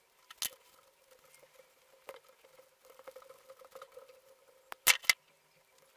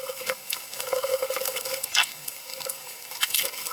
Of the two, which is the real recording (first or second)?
first